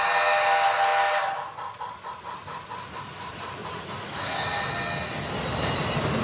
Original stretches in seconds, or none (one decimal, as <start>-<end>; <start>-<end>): 0.0-3.6; 4.6-6.2